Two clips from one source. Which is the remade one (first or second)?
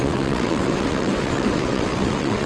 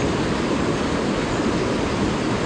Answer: first